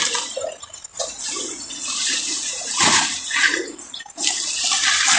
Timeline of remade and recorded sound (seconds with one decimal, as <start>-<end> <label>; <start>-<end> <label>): 0.0-0.9 recorded; 0.9-4.0 remade; 4.0-5.2 recorded